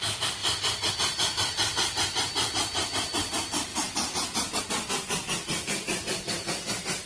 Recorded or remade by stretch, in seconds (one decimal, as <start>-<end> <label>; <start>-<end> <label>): 0.0-7.1 recorded

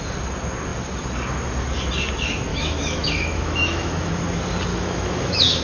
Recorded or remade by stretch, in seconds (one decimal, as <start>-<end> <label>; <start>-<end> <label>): 0.0-2.5 recorded; 2.5-4.1 remade; 4.1-4.7 recorded; 4.7-5.6 remade

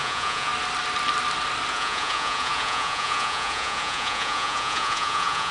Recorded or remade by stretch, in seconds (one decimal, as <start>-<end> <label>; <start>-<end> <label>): 0.0-0.5 remade; 0.5-1.7 recorded; 1.7-5.5 remade

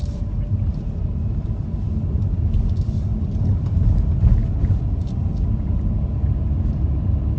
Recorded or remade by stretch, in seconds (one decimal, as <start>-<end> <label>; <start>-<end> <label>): 0.0-7.4 recorded

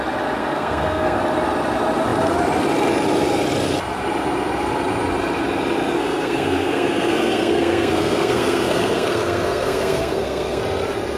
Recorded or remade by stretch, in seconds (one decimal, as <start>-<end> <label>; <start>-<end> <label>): 0.0-0.4 recorded; 0.4-1.2 remade; 1.2-5.9 recorded; 5.9-10.6 remade; 10.6-11.2 recorded

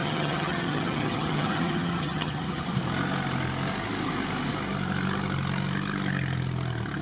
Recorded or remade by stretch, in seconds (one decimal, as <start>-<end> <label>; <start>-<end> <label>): 0.0-2.7 remade; 2.7-7.0 recorded